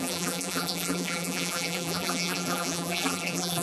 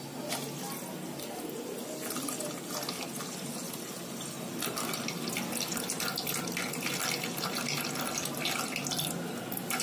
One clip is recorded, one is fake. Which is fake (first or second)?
first